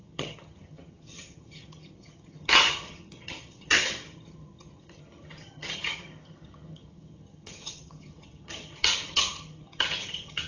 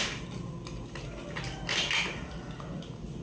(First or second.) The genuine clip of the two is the second